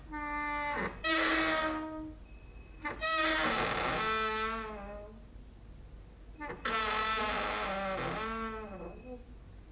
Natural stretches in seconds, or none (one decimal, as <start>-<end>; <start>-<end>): 0.0-9.7